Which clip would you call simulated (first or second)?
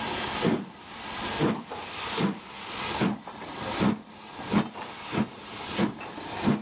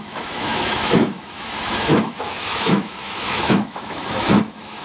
second